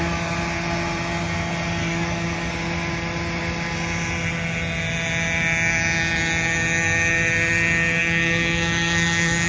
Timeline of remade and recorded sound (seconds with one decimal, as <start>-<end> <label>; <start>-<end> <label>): 0.0-1.8 recorded; 1.8-2.5 remade; 2.5-8.0 recorded; 8.0-9.5 remade